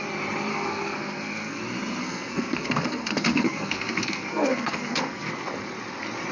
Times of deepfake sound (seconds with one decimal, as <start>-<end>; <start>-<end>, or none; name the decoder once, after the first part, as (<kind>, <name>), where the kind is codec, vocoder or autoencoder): 0.5-1.6 (codec, SNAC); 2.0-5.3